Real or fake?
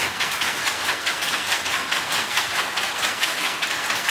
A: fake